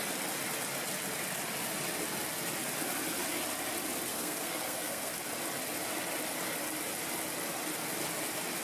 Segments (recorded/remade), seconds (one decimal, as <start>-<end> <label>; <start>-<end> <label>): 0.0-4.1 recorded; 4.1-5.1 remade; 5.1-8.6 recorded